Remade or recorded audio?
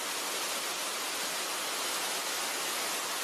recorded